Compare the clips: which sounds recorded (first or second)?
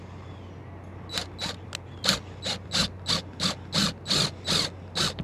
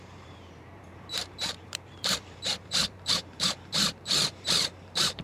first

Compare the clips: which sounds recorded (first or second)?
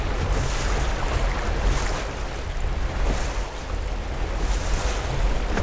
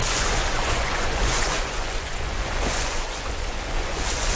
first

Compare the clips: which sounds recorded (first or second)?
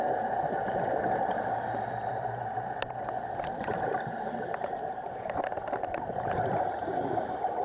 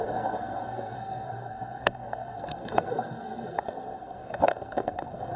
first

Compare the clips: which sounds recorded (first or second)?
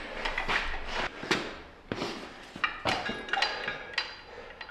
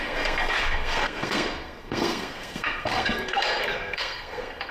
first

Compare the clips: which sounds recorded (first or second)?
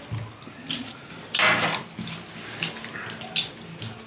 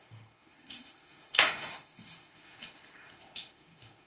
first